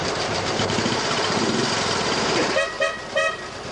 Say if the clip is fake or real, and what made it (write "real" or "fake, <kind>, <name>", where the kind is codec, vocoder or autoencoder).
fake, vocoder, BigVGAN v2